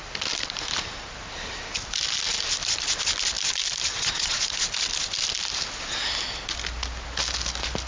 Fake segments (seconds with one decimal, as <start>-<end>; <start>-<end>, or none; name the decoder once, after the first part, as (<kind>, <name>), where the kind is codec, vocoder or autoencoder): 3.9-4.4 (vocoder, Vocos)